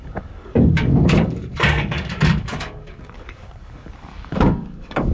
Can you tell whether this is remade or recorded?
remade